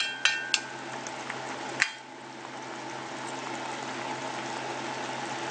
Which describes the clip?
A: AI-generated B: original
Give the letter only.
B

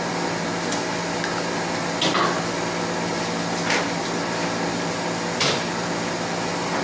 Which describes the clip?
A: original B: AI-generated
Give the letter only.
A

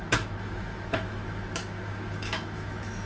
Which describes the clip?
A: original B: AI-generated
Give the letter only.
B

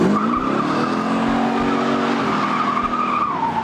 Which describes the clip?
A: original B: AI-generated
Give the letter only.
A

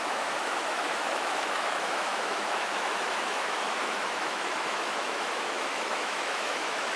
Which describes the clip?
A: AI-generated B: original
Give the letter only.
A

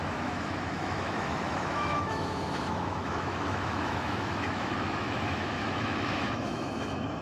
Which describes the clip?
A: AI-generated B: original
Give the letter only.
A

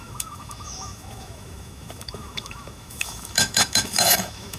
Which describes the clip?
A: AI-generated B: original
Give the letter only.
A